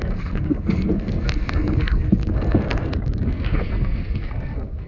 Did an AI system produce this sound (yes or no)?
yes